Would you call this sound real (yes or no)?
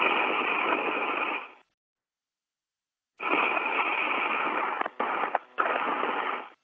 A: yes